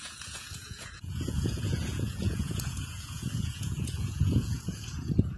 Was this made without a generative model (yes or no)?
no